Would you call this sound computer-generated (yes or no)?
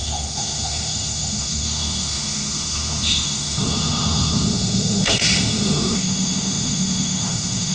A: yes